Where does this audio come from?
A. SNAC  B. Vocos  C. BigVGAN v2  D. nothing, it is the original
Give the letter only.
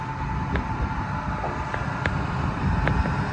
D